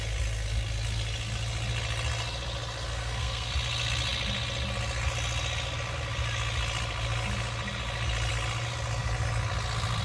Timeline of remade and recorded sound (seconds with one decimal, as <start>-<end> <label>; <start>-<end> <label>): 0.0-2.9 recorded; 2.9-3.5 remade; 3.5-10.0 recorded